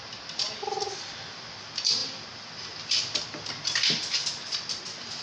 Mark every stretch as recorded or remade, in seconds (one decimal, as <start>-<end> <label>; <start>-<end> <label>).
0.0-5.2 recorded